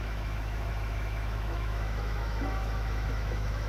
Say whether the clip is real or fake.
fake